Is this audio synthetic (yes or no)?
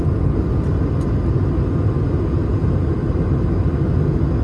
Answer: no